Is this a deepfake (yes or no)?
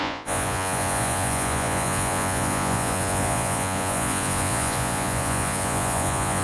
yes